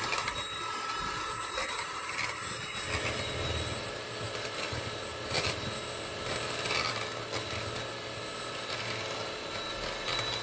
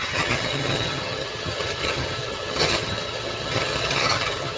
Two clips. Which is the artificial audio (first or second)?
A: second